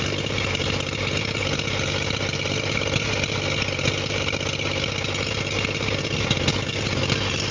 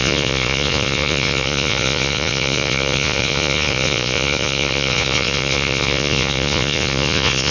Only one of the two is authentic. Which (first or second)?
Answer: first